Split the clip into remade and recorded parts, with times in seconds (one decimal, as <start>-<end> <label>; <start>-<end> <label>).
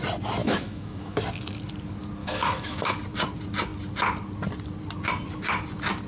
0.0-0.4 recorded; 0.4-1.2 remade; 1.2-2.2 recorded; 2.2-2.9 remade; 2.9-6.1 recorded